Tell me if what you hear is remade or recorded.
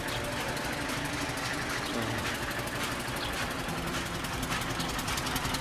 recorded